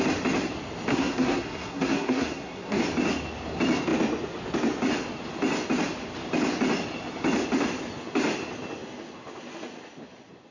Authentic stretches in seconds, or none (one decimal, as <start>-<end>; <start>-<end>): 0.0-0.9; 2.8-10.5